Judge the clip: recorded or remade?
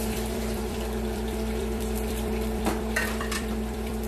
remade